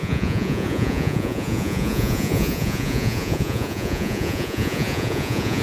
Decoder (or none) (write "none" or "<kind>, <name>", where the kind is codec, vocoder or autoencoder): vocoder, Vocos